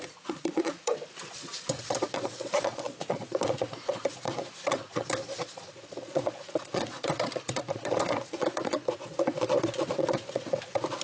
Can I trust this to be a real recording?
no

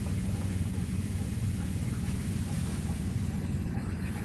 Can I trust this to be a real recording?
no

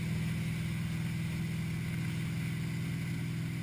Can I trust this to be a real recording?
yes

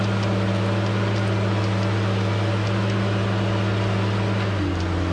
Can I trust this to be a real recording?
yes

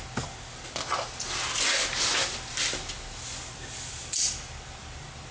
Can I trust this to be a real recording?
yes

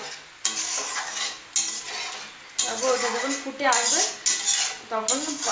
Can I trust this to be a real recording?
yes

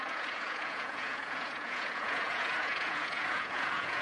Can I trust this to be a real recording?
no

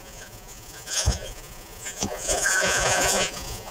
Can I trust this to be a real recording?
no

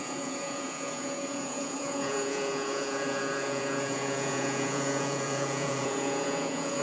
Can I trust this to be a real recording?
no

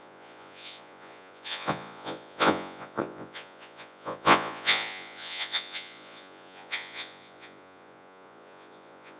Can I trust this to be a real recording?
no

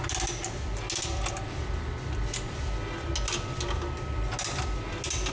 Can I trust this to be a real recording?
yes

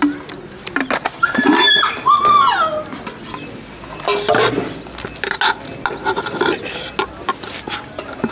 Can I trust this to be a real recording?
yes